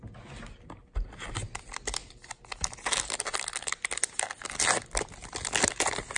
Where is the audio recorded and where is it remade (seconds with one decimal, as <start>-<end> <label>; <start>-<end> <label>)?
0.0-6.2 recorded